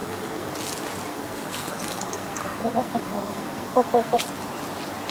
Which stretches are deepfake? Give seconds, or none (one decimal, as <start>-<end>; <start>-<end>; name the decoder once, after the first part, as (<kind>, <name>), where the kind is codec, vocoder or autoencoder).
0.0-0.5 (codec, SNAC); 1.1-4.2